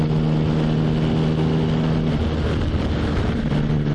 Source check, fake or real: real